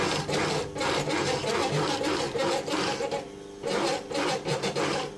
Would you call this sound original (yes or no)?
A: yes